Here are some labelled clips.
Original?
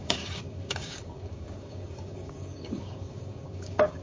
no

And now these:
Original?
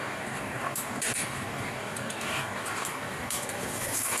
no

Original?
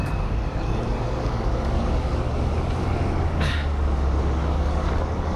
no